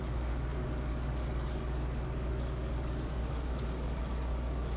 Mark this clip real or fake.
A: fake